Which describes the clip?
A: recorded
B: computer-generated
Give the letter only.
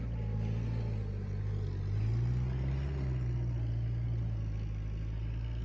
A